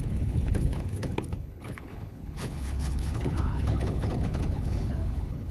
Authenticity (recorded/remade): remade